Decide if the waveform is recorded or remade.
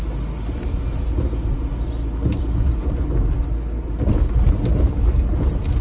recorded